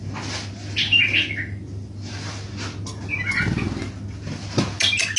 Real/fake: real